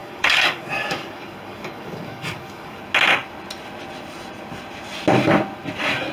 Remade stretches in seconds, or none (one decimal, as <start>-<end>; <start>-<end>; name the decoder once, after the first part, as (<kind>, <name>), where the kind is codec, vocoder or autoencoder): 0.0-2.8 (codec, DAC)